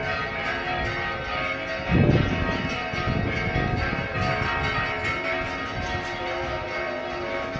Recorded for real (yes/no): yes